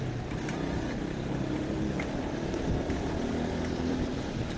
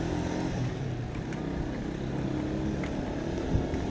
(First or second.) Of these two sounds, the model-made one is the first